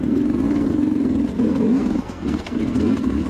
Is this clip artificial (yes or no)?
yes